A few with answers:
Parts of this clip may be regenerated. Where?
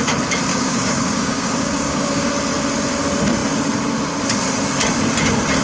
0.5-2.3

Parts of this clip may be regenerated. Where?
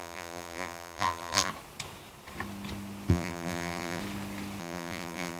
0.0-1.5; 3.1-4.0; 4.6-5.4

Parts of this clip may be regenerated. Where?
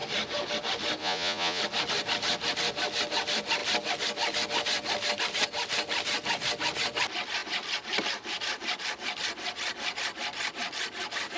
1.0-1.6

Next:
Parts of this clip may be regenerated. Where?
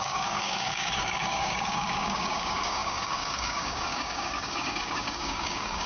0.0-5.9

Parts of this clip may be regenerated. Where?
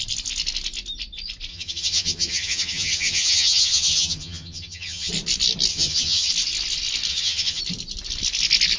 1.5-5.1; 5.7-6.3; 7.1-7.6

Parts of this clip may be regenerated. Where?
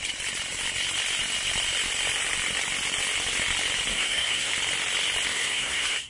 3.9-4.5; 5.3-6.1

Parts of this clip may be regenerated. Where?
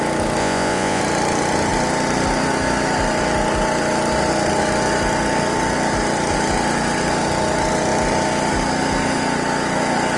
0.4-1.0